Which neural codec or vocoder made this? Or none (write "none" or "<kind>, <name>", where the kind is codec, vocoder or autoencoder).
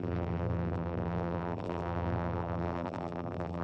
vocoder, BigVGAN v2